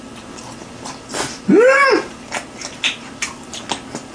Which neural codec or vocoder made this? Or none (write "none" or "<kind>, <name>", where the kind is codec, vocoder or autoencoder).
none